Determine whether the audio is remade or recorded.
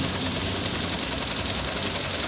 recorded